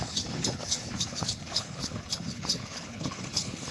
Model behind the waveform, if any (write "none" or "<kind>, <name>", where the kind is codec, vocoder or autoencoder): codec, HILCodec